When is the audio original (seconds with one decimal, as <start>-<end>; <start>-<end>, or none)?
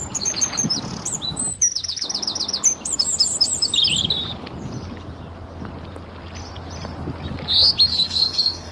0.0-7.9